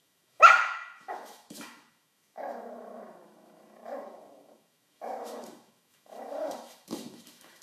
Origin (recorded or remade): remade